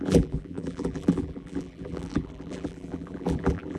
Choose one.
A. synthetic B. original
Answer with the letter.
A